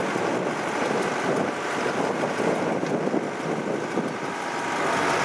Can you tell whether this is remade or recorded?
recorded